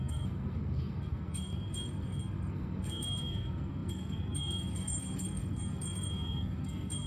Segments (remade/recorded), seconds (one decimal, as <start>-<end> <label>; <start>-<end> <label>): 0.0-7.1 remade